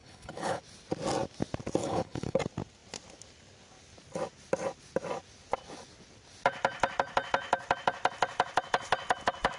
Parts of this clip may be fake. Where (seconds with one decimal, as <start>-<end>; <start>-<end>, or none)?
0.0-0.6; 1.8-2.4